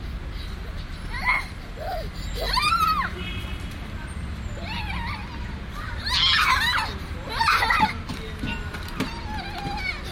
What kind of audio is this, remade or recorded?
recorded